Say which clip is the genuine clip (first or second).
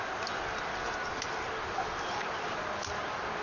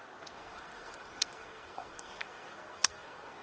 first